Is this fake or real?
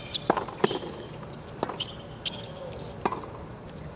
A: real